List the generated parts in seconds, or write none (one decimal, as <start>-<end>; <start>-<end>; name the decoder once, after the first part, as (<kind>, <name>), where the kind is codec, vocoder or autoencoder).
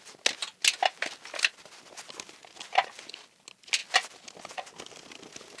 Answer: none